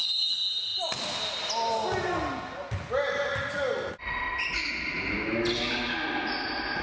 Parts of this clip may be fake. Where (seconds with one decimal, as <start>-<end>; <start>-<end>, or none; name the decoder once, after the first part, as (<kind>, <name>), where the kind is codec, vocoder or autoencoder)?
none